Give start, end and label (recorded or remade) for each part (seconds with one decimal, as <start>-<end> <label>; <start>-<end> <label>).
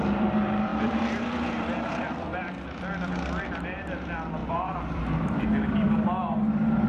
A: 0.0-6.9 remade